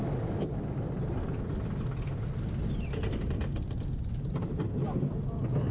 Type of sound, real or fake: real